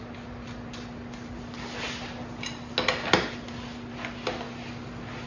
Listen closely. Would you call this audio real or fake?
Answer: real